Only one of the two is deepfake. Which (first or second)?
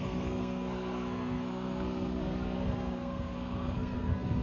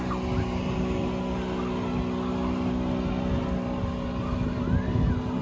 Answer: first